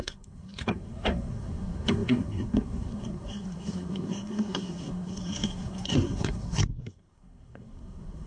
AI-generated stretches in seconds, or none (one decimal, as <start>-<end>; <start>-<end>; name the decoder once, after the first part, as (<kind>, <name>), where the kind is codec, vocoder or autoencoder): 0.0-8.3 (codec, SNAC)